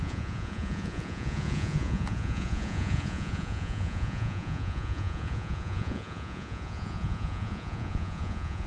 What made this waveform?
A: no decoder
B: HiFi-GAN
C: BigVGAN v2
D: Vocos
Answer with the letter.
D